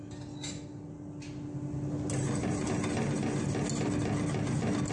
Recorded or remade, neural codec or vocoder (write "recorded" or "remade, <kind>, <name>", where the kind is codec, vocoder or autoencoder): recorded